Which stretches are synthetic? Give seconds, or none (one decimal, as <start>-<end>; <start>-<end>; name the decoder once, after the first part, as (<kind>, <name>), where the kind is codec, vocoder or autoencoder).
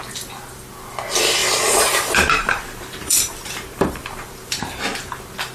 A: 1.4-4.7 (vocoder, BigVGAN v2)